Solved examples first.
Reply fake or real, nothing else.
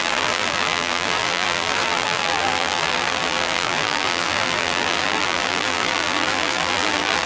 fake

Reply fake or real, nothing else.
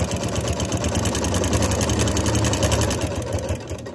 real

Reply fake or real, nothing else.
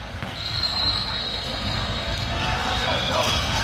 fake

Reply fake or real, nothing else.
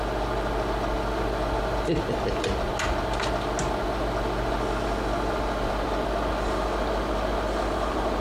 real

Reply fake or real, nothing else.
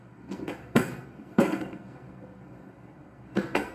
fake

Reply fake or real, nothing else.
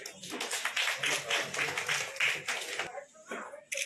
real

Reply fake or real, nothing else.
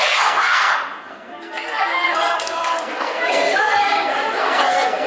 fake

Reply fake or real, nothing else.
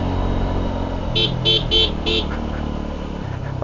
real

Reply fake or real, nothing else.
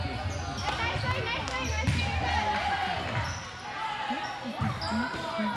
real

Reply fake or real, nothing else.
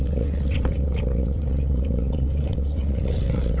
fake